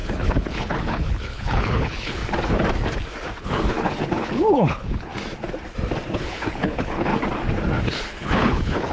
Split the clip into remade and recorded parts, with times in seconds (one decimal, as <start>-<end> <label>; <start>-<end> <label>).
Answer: 0.0-2.2 remade; 2.2-3.4 recorded; 3.4-5.1 remade; 5.1-6.1 recorded; 6.1-7.1 remade; 7.1-7.9 recorded; 7.9-8.9 remade